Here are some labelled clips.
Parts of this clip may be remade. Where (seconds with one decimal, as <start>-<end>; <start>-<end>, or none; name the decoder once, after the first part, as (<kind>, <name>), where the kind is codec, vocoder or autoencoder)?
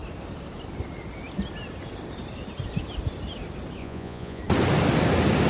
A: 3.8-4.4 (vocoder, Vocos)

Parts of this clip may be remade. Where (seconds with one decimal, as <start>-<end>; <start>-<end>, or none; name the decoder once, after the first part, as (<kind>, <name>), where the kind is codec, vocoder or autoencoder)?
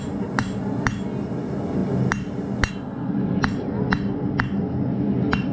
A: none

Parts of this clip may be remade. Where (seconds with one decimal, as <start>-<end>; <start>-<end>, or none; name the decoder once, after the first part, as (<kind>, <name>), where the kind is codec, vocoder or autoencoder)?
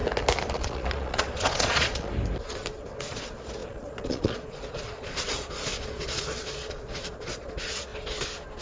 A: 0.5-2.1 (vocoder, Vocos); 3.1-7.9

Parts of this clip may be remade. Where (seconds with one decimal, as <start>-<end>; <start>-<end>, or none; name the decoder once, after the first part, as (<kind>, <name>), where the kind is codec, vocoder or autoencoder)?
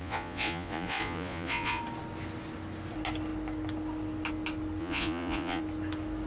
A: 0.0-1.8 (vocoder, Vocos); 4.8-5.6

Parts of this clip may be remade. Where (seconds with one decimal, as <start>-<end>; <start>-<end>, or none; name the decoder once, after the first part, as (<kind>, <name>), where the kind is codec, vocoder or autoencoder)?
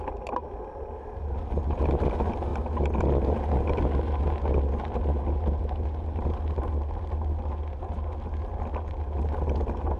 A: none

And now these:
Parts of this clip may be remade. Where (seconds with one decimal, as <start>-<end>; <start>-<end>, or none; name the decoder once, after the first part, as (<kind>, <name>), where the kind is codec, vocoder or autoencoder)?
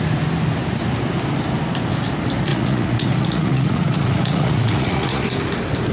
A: 2.5-5.2 (vocoder, Vocos)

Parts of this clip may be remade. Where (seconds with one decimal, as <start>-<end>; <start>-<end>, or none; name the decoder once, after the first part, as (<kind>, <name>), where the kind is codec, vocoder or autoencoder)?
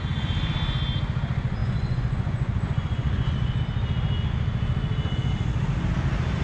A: 1.6-3.6 (vocoder, Vocos)